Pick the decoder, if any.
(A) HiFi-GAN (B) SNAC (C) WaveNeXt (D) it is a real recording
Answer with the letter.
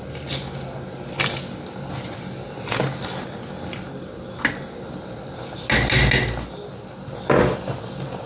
D